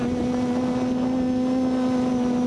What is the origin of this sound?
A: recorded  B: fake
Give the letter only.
A